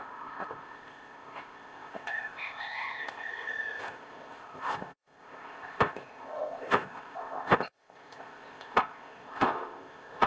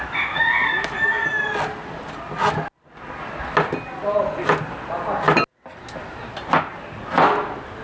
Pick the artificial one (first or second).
first